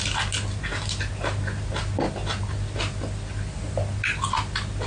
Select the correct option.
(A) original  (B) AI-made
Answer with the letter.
A